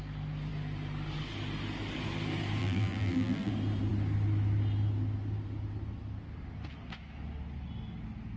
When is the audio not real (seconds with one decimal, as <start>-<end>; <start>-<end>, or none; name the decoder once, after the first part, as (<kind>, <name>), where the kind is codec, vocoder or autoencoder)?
2.6-3.5 (vocoder, BigVGAN v2)